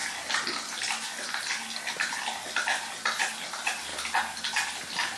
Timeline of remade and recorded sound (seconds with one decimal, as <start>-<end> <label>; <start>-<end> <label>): 0.0-5.2 recorded